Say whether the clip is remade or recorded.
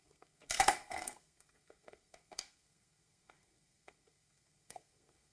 remade